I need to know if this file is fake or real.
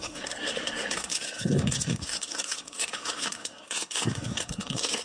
fake